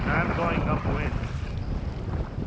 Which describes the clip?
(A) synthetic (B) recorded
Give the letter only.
B